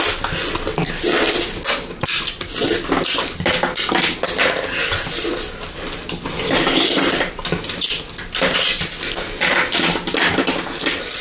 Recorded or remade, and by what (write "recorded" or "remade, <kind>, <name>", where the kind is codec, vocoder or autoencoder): recorded